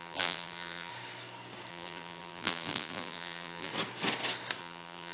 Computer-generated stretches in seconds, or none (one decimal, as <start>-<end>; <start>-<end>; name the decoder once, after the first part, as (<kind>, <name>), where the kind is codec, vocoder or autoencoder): 0.0-0.9 (vocoder, BigVGAN v2); 1.7-3.7; 4.6-5.1